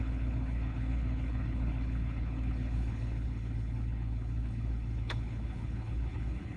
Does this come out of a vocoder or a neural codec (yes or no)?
yes